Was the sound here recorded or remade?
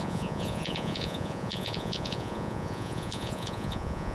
remade